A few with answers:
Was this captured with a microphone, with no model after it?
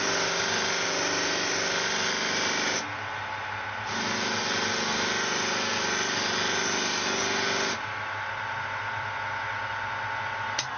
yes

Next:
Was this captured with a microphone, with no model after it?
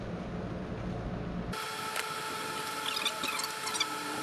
yes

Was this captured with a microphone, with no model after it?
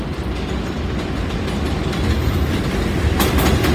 yes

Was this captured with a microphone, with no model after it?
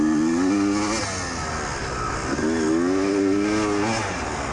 yes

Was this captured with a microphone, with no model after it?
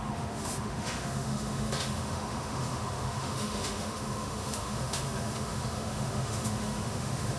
no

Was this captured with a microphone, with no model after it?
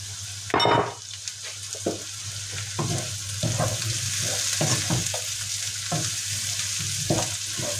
yes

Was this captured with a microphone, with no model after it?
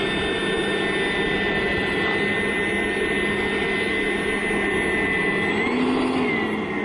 yes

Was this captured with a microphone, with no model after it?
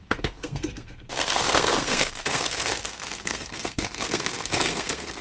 no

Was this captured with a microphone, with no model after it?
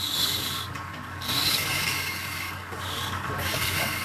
no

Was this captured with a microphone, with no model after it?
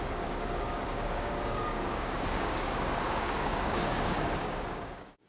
no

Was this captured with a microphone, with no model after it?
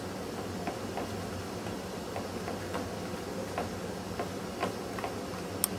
yes